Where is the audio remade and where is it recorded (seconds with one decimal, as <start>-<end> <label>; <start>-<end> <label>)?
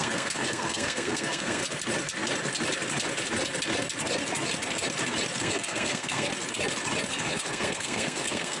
0.0-1.6 remade; 1.6-5.4 recorded; 5.4-6.3 remade; 6.3-7.1 recorded; 7.1-8.6 remade